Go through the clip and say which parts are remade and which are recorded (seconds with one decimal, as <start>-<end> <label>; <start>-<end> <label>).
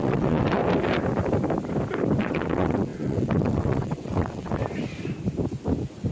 0.0-0.6 remade; 0.6-2.2 recorded; 2.2-4.6 remade; 4.6-6.1 recorded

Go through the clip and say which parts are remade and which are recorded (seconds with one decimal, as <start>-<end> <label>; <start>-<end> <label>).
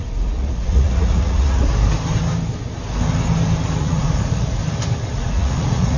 0.0-1.7 remade; 1.7-3.8 recorded; 3.8-4.6 remade; 4.6-5.1 recorded; 5.1-6.0 remade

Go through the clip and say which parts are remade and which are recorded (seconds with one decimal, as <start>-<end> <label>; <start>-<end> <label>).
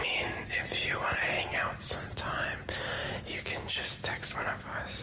0.0-5.0 recorded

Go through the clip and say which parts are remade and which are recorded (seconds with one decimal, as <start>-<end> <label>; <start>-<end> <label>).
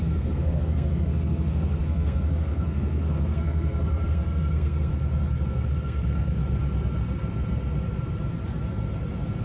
0.0-4.9 remade; 4.9-5.5 recorded; 5.5-6.4 remade; 6.4-9.4 recorded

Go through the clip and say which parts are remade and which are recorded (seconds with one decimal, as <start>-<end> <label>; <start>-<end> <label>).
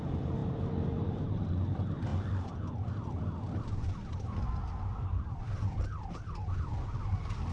0.0-0.4 recorded; 0.4-1.2 remade; 1.2-4.9 recorded; 4.9-6.5 remade; 6.5-7.5 recorded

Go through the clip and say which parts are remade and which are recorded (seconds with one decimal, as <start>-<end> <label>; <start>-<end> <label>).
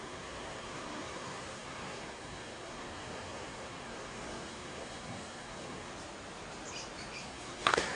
0.0-5.9 remade; 5.9-7.2 recorded; 7.2-7.9 remade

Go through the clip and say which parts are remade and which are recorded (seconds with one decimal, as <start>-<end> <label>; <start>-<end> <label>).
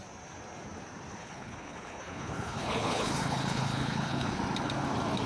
0.0-1.2 recorded; 1.2-4.4 remade; 4.4-5.3 recorded